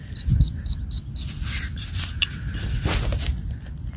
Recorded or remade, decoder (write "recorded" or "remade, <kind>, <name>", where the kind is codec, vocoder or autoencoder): recorded